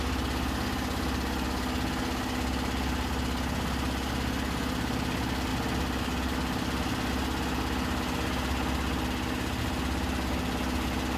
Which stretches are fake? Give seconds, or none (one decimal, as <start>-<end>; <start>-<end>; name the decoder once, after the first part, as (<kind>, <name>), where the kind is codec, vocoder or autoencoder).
none